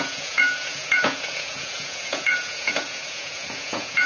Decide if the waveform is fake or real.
fake